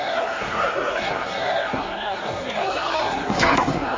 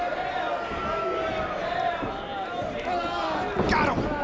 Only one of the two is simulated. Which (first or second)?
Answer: first